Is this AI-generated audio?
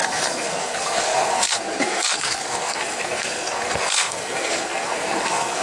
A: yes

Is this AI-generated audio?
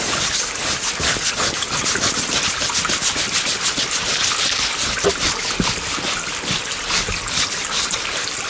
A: no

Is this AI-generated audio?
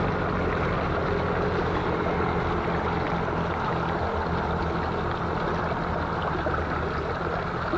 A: no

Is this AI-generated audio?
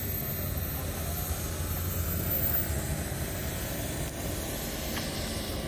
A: no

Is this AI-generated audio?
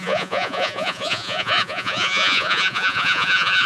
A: yes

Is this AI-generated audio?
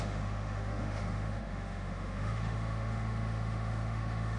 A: yes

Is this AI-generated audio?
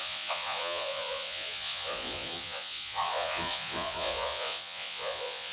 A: yes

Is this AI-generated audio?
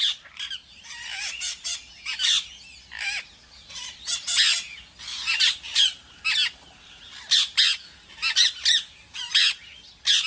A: no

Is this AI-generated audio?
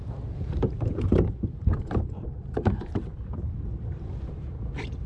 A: yes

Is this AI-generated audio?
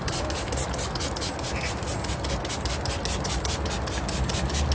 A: no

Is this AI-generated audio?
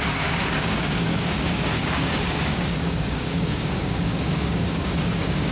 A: yes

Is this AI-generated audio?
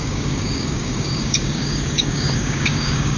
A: yes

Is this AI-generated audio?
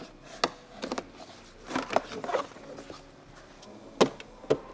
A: no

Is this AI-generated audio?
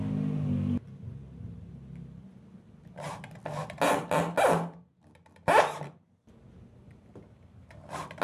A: no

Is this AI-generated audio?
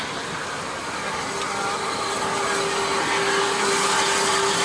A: no